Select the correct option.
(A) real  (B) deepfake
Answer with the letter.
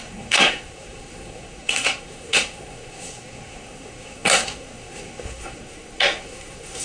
B